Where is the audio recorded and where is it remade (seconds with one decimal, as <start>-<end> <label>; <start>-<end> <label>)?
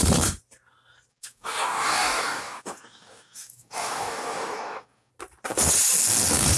0.0-1.1 recorded; 1.1-5.1 remade; 5.1-6.6 recorded